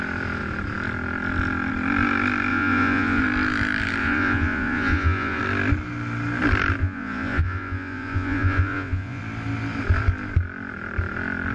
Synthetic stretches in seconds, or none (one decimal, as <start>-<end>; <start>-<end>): 2.5-3.2; 4.0-5.4; 6.8-9.2